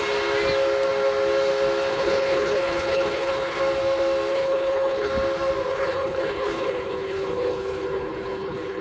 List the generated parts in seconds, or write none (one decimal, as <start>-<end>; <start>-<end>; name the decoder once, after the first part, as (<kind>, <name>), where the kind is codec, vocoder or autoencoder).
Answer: 1.9-3.6 (codec, HILCodec); 4.3-5.1; 5.7-8.8

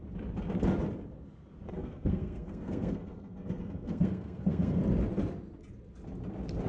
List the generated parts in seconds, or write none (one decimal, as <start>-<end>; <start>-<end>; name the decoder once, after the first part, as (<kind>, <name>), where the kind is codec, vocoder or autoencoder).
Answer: 1.7-4.8 (codec, SNAC)

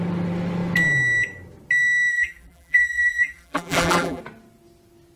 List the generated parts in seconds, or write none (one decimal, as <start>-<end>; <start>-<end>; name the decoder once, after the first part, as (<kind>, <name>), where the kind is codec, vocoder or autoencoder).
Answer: 2.1-4.2 (vocoder, BigVGAN v2)

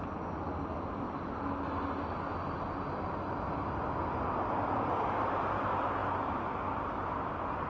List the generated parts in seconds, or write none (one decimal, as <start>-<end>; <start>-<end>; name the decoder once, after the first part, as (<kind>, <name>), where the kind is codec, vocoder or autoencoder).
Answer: 6.0-6.8 (vocoder, BigVGAN v2)